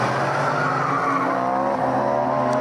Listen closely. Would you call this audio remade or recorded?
recorded